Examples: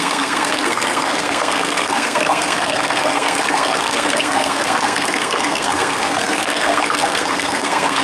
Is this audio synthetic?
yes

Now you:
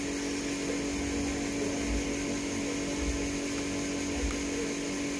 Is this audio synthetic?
no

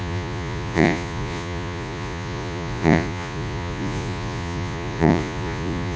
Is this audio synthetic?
yes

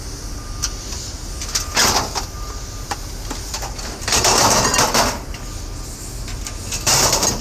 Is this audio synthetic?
no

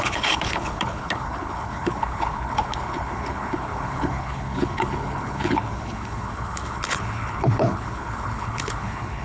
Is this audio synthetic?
yes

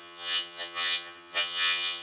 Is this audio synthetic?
yes